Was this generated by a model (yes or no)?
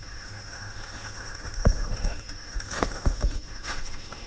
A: yes